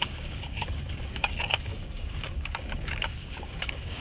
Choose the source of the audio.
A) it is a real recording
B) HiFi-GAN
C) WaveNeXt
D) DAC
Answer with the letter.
D